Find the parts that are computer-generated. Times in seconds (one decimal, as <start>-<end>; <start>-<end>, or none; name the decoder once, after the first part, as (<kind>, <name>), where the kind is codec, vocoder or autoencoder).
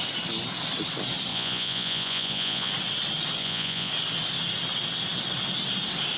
1.3-2.7 (vocoder, Vocos); 3.4-3.9